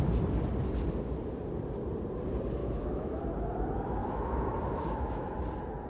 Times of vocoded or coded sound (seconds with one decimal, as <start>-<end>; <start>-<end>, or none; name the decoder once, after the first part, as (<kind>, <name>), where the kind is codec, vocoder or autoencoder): 2.6-3.2 (autoencoder, DAC-VAE); 4.0-5.3